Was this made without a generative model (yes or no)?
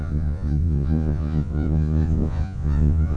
no